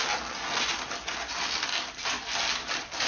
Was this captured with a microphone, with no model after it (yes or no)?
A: yes